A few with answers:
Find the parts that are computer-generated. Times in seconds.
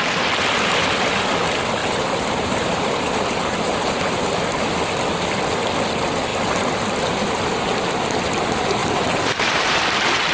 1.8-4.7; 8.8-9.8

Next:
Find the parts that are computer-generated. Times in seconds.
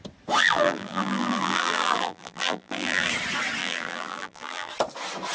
0.4-3.1; 3.6-4.7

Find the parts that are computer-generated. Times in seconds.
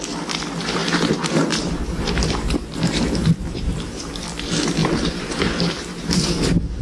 0.8-4.1; 4.8-6.8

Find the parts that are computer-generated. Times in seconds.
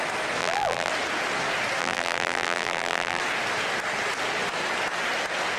0.4-0.9; 1.8-3.2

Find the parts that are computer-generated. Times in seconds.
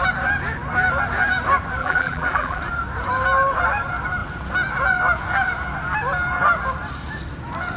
1.8-2.6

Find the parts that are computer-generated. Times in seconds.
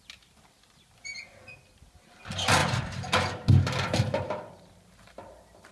none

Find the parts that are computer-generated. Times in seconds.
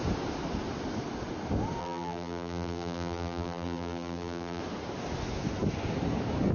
1.8-4.6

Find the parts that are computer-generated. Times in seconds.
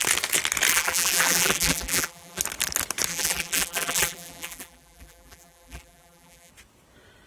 0.7-2.4; 3.1-6.5